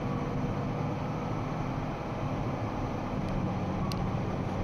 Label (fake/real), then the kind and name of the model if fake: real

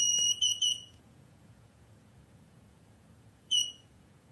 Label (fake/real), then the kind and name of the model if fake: fake, vocoder, Vocos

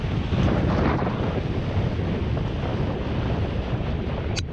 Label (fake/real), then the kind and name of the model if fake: real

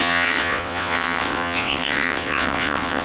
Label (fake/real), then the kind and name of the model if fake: fake, vocoder, WaveNeXt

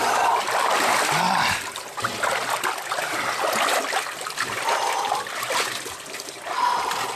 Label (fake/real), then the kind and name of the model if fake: real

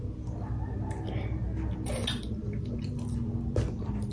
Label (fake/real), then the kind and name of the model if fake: real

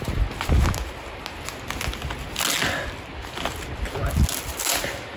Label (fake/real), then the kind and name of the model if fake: real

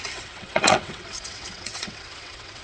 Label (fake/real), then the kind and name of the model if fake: fake, vocoder, WaveNeXt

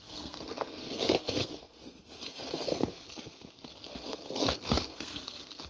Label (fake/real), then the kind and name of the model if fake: fake, codec, SNAC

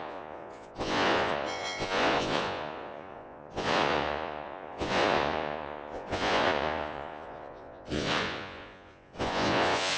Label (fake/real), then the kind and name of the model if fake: fake, vocoder, Vocos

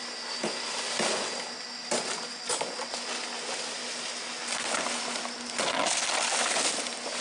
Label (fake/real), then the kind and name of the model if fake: real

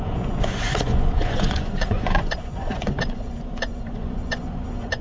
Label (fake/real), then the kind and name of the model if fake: fake, vocoder, Vocos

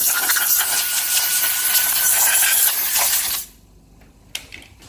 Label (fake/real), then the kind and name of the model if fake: real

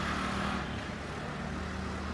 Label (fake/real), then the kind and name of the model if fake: real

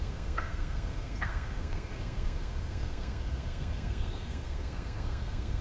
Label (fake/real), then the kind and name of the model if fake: fake, codec, SNAC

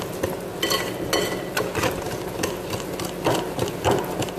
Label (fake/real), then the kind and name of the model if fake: real